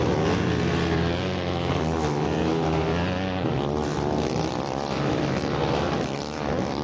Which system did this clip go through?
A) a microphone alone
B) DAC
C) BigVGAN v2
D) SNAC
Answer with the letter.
A